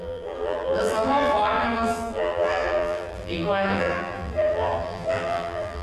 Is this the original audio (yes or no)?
no